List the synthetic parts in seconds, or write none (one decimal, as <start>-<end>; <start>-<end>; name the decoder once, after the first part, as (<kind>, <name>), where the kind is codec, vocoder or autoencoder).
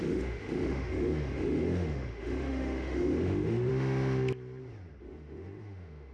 0.0-3.7 (autoencoder, DAC-VAE); 5.0-6.1